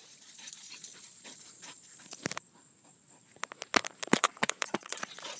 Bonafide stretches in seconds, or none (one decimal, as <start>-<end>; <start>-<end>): 0.9-4.1